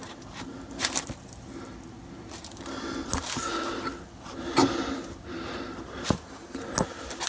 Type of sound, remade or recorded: recorded